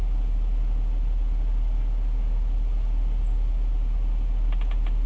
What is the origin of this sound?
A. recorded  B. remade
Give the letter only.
A